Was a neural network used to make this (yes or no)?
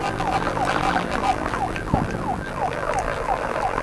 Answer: yes